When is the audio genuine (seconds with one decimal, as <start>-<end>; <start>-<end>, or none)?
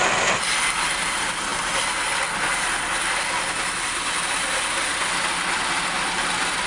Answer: 0.0-6.7